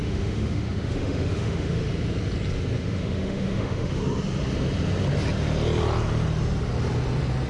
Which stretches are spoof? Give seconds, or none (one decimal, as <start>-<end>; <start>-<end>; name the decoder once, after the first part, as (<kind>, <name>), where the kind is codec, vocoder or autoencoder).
0.0-1.9 (autoencoder, DAC-VAE); 2.8-4.0